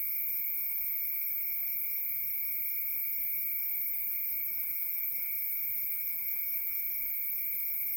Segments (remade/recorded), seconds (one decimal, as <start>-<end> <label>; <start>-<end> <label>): 0.0-4.5 recorded; 4.5-5.3 remade; 5.3-5.9 recorded; 5.9-6.9 remade; 6.9-8.0 recorded